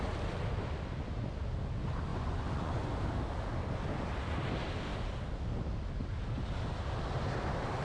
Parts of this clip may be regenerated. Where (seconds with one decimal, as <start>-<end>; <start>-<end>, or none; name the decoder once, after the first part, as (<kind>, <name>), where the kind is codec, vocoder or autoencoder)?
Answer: 2.1-3.0 (vocoder, Vocos)